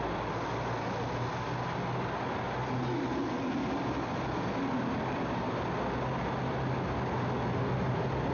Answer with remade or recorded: recorded